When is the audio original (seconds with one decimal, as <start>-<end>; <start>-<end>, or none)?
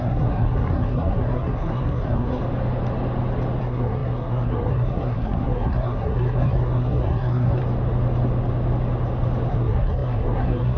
2.4-3.6; 7.6-9.5